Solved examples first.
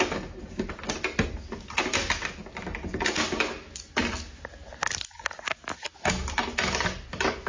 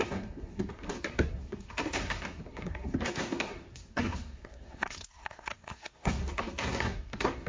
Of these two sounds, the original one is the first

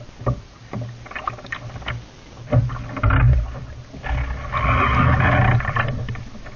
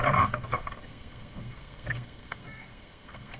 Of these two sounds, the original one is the first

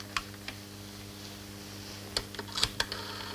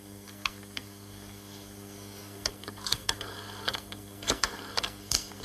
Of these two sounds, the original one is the first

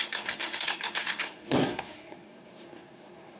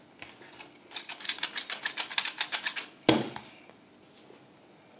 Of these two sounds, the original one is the second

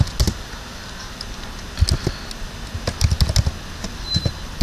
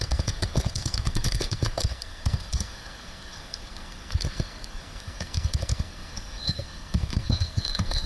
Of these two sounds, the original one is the first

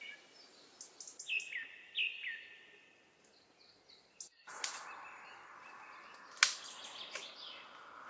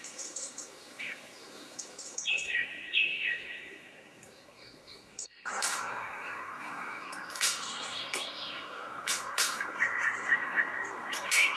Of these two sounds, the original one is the first